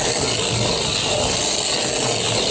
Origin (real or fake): real